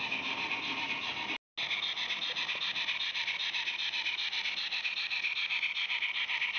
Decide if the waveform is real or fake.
real